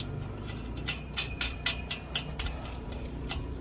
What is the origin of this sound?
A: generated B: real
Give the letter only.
B